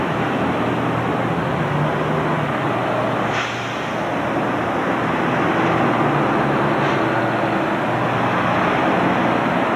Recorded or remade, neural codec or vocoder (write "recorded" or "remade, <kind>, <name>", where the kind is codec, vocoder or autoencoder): recorded